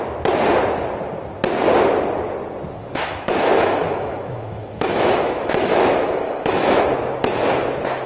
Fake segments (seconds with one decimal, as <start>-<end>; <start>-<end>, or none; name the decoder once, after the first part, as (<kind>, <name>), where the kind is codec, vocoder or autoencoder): 2.8-6.8 (autoencoder, DAC-VAE)